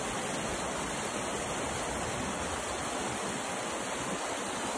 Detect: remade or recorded recorded